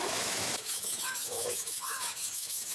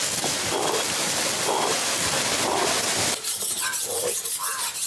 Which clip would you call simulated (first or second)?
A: first